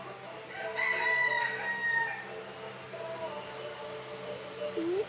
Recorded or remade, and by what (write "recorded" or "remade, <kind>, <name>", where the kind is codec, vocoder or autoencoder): recorded